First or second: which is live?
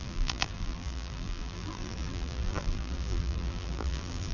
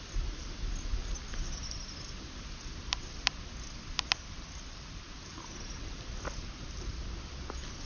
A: second